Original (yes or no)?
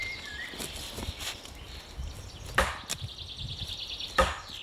yes